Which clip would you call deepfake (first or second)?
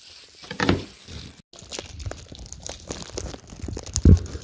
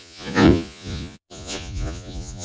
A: second